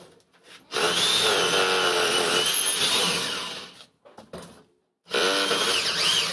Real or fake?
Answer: real